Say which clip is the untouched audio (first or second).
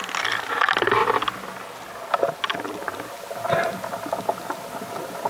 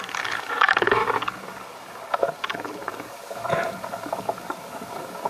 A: first